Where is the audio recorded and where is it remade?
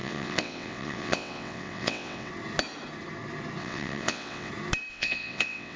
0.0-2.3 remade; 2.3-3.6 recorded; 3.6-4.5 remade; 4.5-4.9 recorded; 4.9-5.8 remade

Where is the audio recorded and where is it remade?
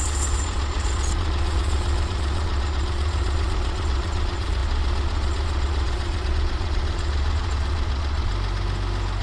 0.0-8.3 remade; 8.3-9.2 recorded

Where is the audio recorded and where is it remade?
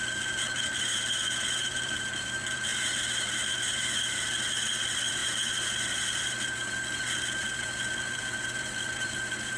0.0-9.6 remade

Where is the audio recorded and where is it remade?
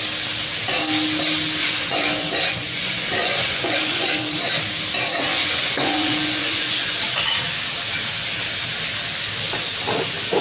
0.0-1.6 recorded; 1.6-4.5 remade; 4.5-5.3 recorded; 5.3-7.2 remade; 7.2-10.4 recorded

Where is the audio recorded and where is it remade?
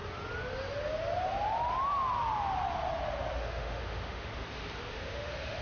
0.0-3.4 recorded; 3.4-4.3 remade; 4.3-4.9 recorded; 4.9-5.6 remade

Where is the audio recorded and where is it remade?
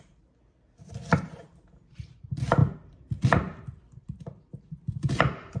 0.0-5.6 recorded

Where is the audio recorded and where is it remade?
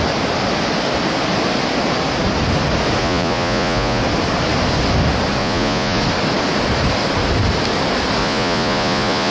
0.0-3.0 recorded; 3.0-4.0 remade; 4.0-5.4 recorded; 5.4-6.0 remade; 6.0-8.2 recorded; 8.2-9.3 remade